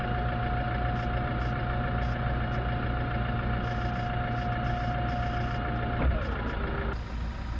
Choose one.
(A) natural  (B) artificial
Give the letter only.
A